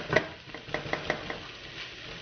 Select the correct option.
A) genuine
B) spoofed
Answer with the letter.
A